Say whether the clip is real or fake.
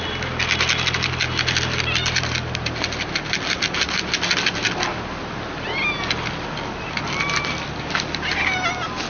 real